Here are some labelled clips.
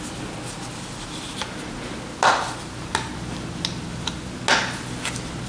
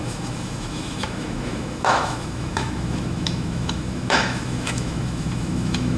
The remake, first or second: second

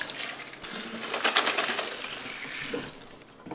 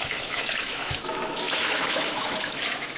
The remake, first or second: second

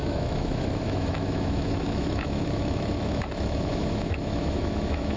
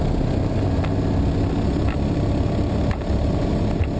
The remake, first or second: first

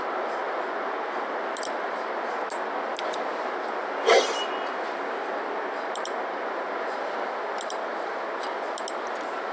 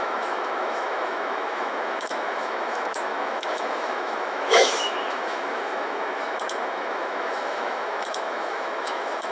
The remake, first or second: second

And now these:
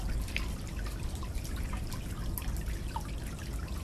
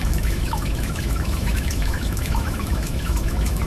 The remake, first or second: second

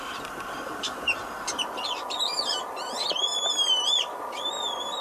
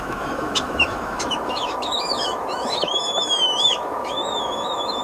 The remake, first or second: second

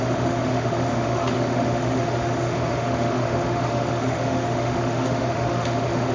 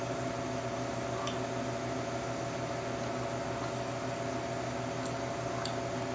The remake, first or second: first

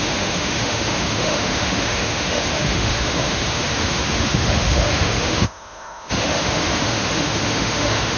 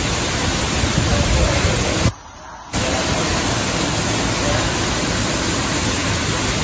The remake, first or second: first